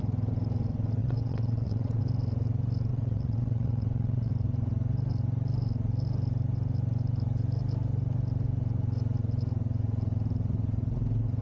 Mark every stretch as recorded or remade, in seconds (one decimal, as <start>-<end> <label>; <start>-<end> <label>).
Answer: 0.0-1.0 recorded; 1.0-2.0 remade; 2.0-2.9 recorded; 2.9-4.3 remade; 4.3-11.4 recorded